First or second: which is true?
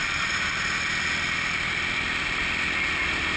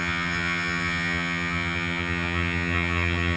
first